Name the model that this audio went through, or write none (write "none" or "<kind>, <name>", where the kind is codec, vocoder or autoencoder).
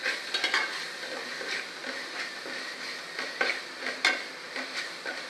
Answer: none